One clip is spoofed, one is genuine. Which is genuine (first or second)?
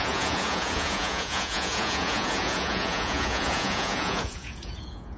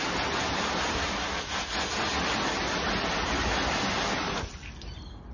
second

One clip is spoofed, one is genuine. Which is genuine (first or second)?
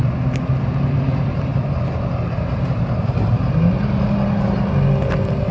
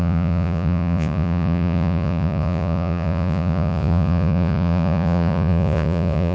first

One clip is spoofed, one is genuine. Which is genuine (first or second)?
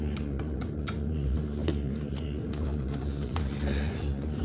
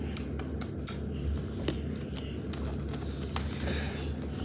second